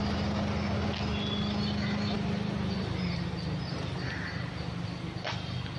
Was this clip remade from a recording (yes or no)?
no